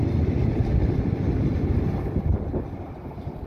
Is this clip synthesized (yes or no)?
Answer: no